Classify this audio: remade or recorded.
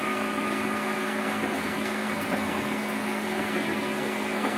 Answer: remade